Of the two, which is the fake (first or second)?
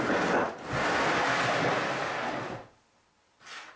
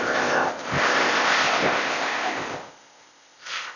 second